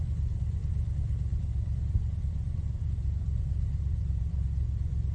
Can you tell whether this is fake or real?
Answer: fake